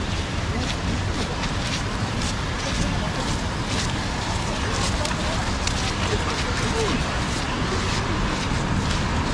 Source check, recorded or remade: recorded